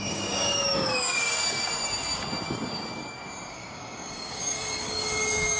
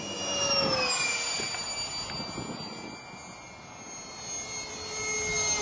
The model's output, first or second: first